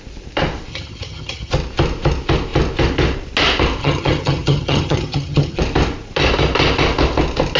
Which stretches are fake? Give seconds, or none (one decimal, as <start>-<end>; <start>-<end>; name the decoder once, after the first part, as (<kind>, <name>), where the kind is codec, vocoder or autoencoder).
0.7-1.5 (vocoder, HiFi-GAN); 3.8-5.6